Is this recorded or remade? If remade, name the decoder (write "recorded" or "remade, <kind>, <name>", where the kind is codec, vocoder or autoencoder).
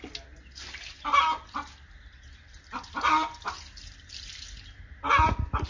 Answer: recorded